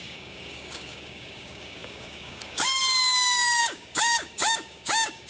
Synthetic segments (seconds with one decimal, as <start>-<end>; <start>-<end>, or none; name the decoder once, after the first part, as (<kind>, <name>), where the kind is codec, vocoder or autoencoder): 0.0-2.8 (codec, DAC); 3.6-5.3

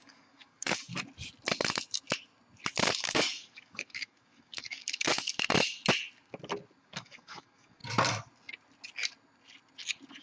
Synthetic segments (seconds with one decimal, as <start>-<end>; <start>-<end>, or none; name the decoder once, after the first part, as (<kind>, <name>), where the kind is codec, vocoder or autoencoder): 0.0-0.9 (codec, DAC); 2.9-5.3; 6.8-7.8

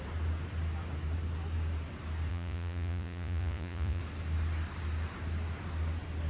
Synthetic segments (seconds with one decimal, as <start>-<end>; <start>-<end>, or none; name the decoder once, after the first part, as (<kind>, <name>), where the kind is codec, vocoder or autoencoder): 2.3-4.0 (vocoder, Vocos)

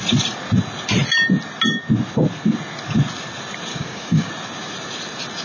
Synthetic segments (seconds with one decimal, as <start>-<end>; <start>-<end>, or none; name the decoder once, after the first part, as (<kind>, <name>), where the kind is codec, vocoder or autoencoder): 3.7-4.3 (codec, DAC)

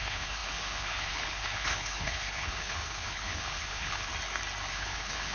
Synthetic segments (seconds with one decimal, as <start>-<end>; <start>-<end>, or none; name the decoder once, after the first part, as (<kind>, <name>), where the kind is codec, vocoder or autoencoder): 0.0-4.1 (codec, HILCodec); 4.7-5.3